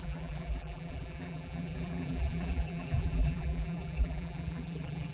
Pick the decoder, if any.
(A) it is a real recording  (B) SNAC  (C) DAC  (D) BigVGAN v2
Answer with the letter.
D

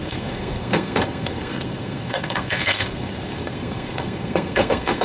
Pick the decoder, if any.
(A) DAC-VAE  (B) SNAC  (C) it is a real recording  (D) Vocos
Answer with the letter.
B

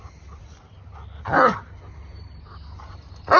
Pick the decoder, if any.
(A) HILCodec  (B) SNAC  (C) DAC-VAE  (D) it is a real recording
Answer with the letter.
D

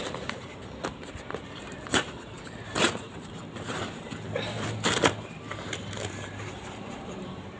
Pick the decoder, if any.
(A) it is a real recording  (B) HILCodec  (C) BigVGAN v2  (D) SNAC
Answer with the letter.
C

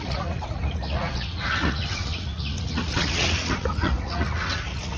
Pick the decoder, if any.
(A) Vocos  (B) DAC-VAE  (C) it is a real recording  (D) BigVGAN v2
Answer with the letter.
A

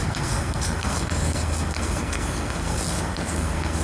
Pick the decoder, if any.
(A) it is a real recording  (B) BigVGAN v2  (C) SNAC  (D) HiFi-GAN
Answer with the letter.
C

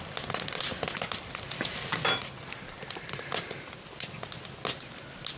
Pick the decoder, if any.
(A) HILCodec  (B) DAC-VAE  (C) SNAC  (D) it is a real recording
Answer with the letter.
D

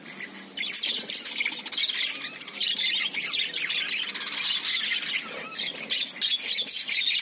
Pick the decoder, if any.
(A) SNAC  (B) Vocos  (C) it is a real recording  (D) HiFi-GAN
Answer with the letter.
C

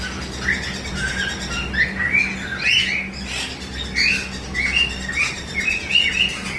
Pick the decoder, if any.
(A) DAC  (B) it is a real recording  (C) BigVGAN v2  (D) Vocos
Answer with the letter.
B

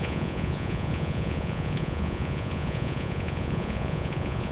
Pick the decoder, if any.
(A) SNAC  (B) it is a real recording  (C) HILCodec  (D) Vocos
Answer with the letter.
D